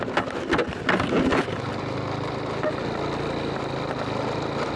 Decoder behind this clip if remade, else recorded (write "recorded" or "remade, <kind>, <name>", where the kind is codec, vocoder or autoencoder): recorded